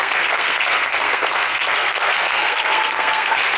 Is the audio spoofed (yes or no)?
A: yes